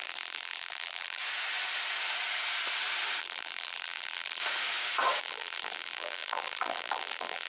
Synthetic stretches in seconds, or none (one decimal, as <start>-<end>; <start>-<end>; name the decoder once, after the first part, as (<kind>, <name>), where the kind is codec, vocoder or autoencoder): 0.0-1.2 (vocoder, BigVGAN v2); 3.2-4.4; 5.2-7.5